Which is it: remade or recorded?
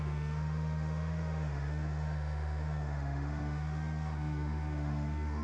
remade